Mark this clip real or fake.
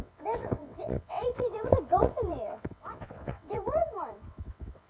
fake